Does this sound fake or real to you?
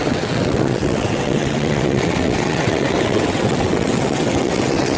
fake